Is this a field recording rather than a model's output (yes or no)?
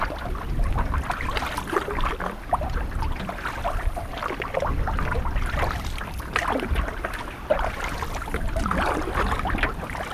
yes